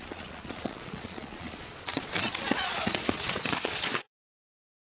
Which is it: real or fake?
fake